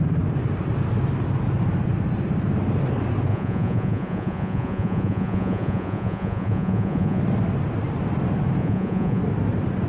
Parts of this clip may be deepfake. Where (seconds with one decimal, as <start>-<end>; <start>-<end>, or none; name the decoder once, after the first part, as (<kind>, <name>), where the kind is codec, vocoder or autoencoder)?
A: 3.3-7.2 (vocoder, Vocos); 8.6-9.2